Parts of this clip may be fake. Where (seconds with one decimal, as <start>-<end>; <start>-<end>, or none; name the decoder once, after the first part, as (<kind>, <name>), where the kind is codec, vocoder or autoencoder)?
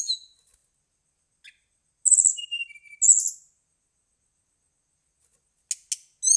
none